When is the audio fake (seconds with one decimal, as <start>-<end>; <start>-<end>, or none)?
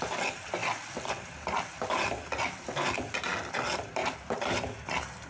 0.0-0.6; 3.8-5.3